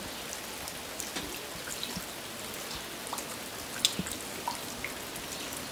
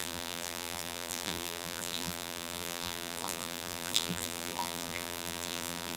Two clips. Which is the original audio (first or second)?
first